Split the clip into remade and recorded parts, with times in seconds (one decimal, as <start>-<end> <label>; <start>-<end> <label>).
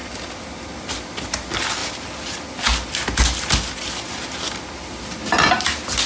0.0-6.1 recorded